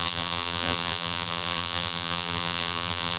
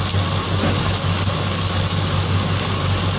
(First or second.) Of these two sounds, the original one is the second